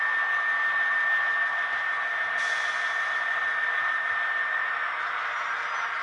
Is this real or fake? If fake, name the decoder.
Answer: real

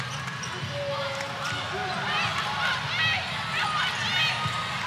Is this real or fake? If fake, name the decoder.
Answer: real